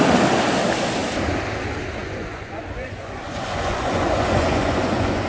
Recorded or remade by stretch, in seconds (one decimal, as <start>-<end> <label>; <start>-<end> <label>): 0.0-2.0 recorded; 2.0-5.3 remade